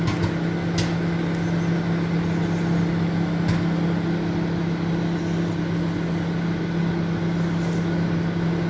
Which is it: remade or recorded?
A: recorded